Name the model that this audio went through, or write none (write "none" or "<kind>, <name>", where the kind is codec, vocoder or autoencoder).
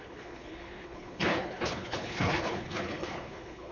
codec, HILCodec